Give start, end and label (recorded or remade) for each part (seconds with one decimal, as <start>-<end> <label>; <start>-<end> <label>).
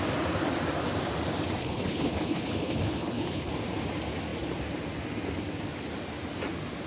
0.0-1.6 recorded; 1.6-3.5 remade; 3.5-6.9 recorded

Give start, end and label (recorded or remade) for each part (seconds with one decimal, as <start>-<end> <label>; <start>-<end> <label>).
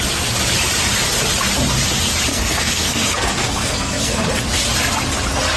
0.0-2.3 recorded; 2.3-4.3 remade; 4.3-5.6 recorded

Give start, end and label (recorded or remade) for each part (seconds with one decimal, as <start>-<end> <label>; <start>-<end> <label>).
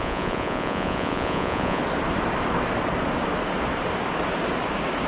0.0-1.8 remade; 1.8-5.1 recorded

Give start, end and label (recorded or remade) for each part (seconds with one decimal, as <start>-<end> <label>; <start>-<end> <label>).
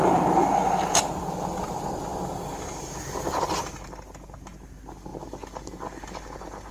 0.0-6.7 recorded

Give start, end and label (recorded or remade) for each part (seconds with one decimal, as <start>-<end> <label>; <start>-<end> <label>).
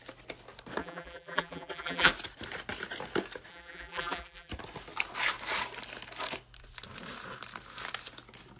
0.0-0.8 recorded; 0.8-2.1 remade; 2.1-3.5 recorded; 3.5-4.5 remade; 4.5-8.6 recorded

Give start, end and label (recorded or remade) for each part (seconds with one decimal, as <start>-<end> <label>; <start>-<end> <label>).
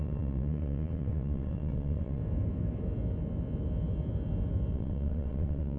0.0-2.2 remade; 2.2-4.7 recorded; 4.7-5.8 remade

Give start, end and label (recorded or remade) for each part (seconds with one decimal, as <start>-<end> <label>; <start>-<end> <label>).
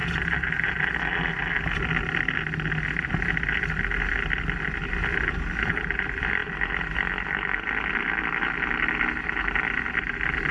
0.0-10.5 recorded